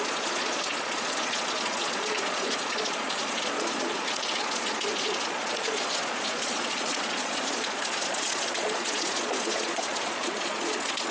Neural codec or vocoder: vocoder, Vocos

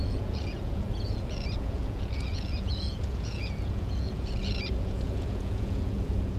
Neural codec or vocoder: vocoder, Vocos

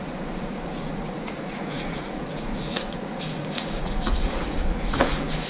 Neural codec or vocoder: vocoder, Vocos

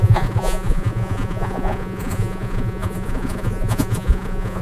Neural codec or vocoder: vocoder, Vocos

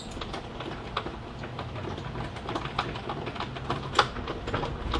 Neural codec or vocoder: none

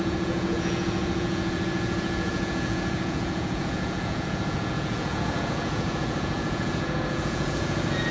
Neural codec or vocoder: vocoder, Vocos